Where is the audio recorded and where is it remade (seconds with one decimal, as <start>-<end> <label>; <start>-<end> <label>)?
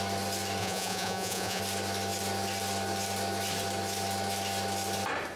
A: 0.0-0.6 recorded; 0.6-1.6 remade; 1.6-5.4 recorded